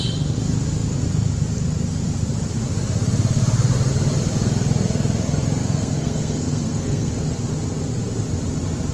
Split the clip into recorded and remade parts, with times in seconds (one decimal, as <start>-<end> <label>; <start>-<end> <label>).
0.0-5.6 recorded; 5.6-7.1 remade; 7.1-8.9 recorded